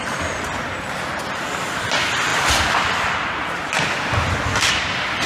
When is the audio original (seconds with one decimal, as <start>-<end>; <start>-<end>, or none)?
0.0-5.3